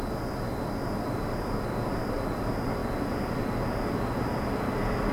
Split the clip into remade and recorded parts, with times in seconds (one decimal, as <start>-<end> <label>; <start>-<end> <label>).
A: 0.0-5.1 recorded